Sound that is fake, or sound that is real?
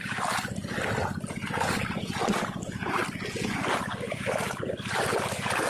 real